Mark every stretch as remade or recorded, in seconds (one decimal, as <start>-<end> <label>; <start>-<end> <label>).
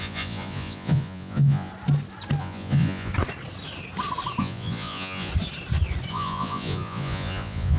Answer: 0.0-1.7 remade; 1.7-2.4 recorded; 2.4-3.1 remade; 3.1-4.4 recorded; 4.4-5.3 remade; 5.3-6.1 recorded; 6.1-7.8 remade